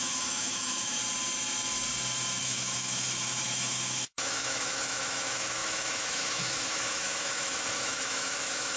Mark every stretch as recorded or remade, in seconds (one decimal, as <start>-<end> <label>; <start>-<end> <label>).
0.0-1.0 remade; 1.0-2.4 recorded; 2.4-8.8 remade